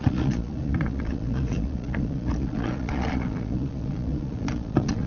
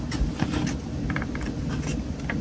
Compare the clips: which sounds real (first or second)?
second